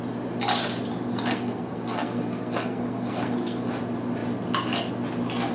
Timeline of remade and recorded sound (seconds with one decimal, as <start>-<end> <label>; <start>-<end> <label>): 0.0-1.1 recorded; 1.1-3.7 remade; 3.7-5.5 recorded